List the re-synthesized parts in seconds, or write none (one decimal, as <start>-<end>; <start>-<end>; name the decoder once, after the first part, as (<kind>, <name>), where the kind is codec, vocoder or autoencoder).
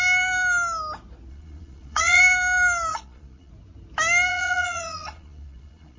1.3-2.2 (vocoder, Vocos); 2.9-3.5; 4.3-6.0